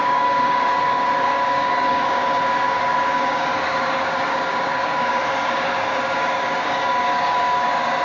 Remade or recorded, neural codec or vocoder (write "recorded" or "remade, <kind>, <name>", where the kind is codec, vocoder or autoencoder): remade, codec, DAC